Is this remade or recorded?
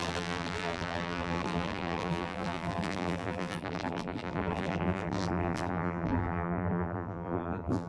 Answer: remade